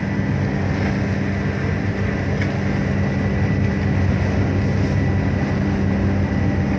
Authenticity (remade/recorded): recorded